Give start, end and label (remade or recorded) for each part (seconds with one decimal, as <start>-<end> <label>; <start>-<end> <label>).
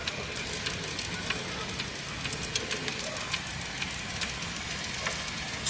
0.0-5.7 recorded